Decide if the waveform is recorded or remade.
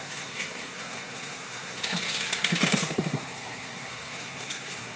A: remade